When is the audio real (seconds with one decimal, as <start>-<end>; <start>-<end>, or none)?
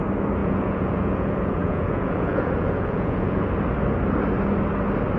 0.0-0.4; 3.5-5.2